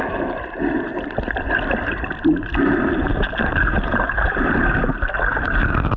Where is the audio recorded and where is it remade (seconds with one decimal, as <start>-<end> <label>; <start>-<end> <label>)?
0.0-0.9 recorded; 0.9-4.5 remade; 4.5-6.0 recorded